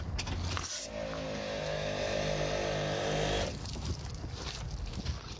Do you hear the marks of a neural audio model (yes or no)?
no